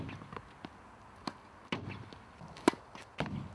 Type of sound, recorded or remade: recorded